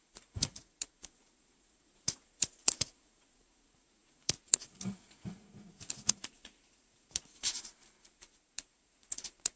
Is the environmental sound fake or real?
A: fake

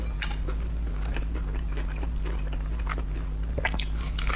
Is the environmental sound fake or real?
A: real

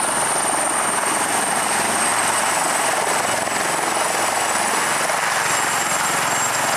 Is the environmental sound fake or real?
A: real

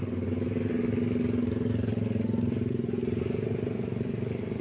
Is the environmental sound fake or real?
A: real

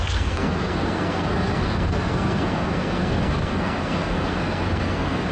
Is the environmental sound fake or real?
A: fake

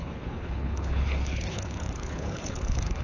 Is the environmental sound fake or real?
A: fake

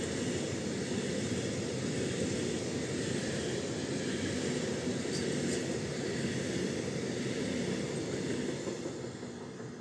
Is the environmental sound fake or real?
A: real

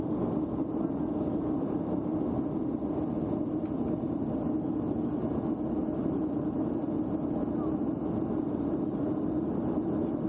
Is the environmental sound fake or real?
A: real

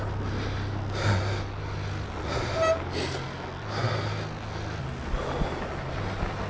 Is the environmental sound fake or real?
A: real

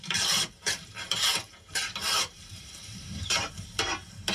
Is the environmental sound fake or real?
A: fake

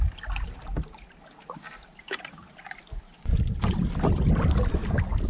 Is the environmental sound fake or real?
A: real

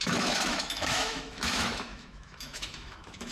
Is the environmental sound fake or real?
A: fake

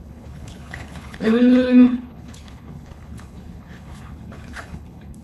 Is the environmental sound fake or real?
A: fake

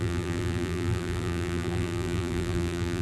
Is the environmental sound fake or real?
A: fake